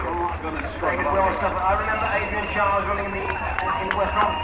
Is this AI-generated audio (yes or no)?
yes